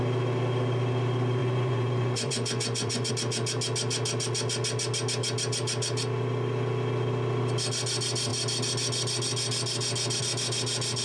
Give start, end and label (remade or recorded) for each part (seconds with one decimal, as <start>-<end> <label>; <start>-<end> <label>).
0.0-1.4 recorded; 1.4-3.1 remade; 3.1-11.0 recorded